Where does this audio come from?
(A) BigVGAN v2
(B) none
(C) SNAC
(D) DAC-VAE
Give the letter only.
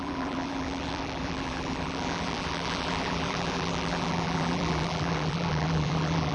A